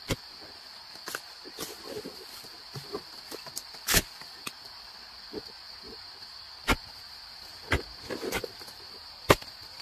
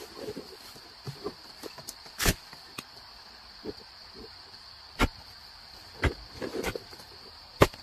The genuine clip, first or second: first